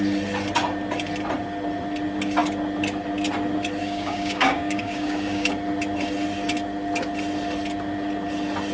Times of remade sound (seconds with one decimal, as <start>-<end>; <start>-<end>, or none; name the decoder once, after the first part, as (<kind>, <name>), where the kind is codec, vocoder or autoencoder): 3.8-5.5 (codec, DAC)